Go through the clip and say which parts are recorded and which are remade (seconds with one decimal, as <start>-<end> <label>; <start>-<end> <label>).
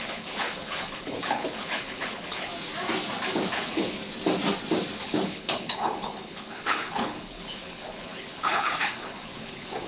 0.0-2.5 remade; 2.5-3.5 recorded; 3.5-4.0 remade; 4.0-5.0 recorded; 5.0-9.9 remade